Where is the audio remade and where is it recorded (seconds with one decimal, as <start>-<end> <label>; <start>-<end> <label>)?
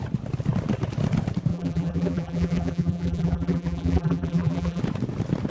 0.0-1.5 recorded; 1.5-4.8 remade; 4.8-5.5 recorded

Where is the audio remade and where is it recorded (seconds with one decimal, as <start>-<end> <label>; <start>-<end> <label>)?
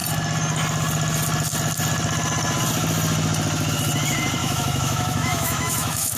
0.0-4.4 recorded; 4.4-6.2 remade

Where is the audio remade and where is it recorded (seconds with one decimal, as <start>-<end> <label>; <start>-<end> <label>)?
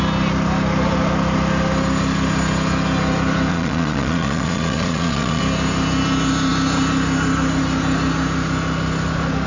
0.0-3.5 recorded; 3.5-5.4 remade; 5.4-9.5 recorded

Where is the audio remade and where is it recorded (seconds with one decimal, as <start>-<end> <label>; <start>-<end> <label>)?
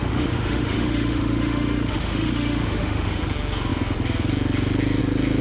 0.0-3.2 remade; 3.2-5.4 recorded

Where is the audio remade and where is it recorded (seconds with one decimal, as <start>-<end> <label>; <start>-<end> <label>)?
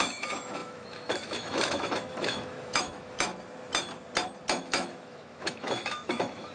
0.0-3.3 remade; 3.3-4.6 recorded; 4.6-6.5 remade